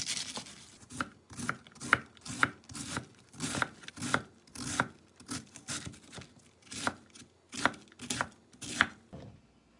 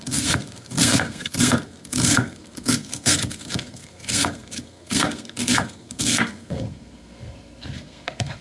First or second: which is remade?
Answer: second